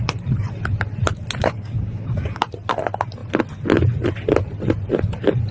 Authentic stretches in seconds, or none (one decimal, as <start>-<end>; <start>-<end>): 0.0-1.4; 2.4-5.5